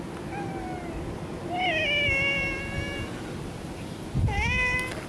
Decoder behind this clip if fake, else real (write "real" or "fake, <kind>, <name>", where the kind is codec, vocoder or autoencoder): real